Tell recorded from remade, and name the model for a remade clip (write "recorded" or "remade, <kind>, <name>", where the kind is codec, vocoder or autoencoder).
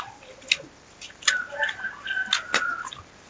recorded